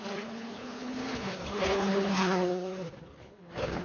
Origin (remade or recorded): remade